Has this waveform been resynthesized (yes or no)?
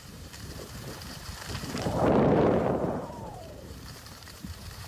yes